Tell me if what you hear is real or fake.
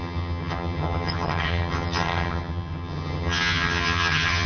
fake